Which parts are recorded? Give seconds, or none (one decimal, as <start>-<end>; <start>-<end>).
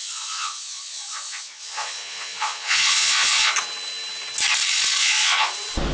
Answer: 3.5-5.0; 5.5-5.9